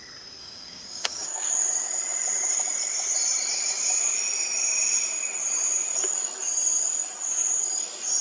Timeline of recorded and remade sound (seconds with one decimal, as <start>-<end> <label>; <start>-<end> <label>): 0.0-0.4 recorded; 0.4-1.5 remade; 1.5-8.2 recorded

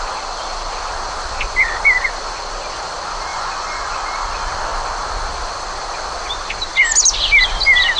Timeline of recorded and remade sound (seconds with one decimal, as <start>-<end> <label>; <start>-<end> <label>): 0.0-3.3 recorded; 3.3-4.0 remade; 4.0-8.0 recorded

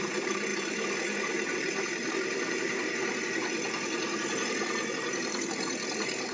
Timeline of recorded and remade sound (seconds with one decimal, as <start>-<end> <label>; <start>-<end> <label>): 0.0-6.3 remade